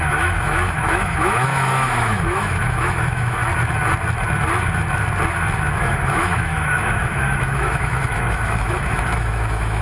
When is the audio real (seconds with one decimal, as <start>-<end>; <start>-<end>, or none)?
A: 3.4-5.8